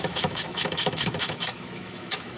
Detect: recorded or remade remade